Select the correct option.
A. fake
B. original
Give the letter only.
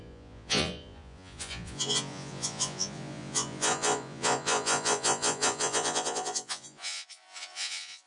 A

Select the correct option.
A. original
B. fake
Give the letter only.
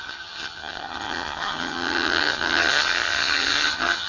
B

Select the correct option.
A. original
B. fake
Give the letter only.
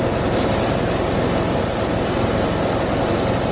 B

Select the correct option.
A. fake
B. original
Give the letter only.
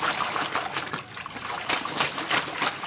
A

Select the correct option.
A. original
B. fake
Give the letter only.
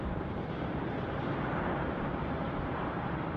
B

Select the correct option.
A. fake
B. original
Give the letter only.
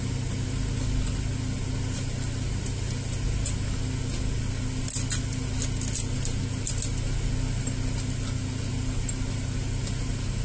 B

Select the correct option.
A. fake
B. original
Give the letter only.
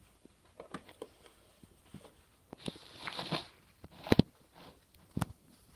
A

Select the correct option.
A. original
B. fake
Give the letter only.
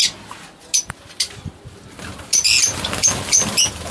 A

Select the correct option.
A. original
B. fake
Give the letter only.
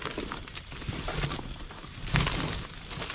A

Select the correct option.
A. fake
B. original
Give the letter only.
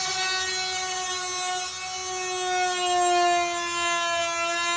B